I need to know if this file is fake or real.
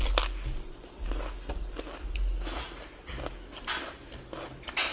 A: real